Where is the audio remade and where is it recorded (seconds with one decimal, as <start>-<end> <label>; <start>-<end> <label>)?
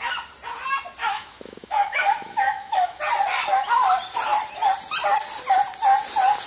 0.0-1.0 recorded; 1.0-3.0 remade; 3.0-6.5 recorded